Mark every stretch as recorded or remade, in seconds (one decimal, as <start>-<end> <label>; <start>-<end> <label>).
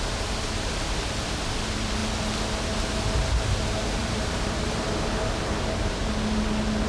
0.0-4.0 recorded; 4.0-6.1 remade; 6.1-6.9 recorded